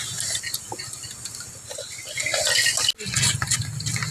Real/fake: real